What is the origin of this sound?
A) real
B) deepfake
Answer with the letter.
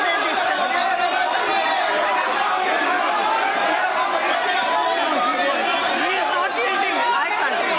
A